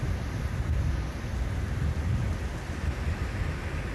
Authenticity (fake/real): real